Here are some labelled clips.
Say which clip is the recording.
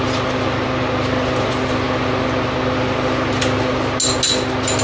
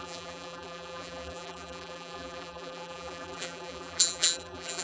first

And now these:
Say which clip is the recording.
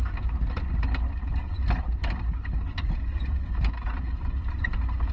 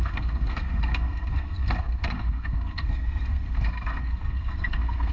first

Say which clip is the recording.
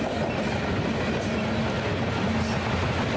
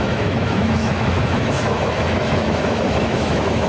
first